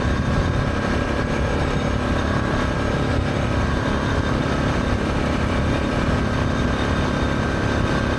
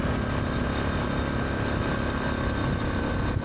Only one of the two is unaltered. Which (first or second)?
second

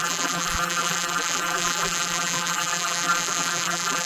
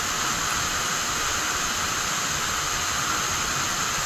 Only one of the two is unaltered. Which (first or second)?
second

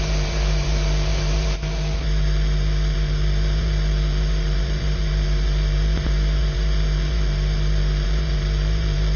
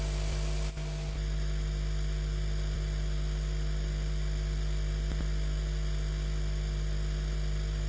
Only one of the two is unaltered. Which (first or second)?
second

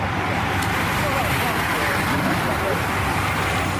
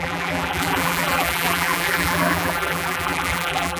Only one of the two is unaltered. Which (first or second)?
first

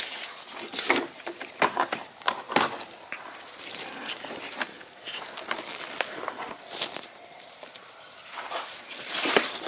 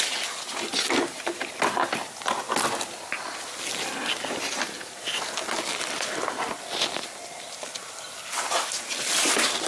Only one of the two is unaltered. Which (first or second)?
second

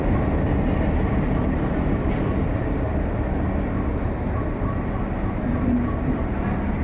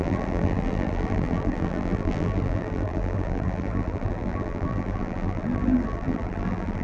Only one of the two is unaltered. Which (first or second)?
first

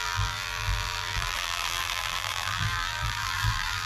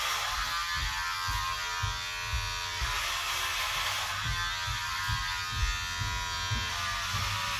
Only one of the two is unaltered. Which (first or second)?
second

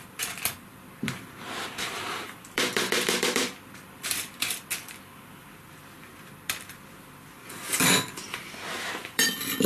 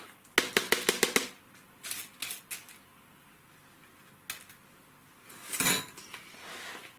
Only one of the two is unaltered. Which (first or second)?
second